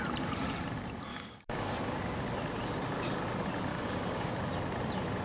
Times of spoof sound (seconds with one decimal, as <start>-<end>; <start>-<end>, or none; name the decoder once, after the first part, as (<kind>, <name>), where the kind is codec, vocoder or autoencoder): 1.1-1.7 (codec, DAC); 3.7-4.3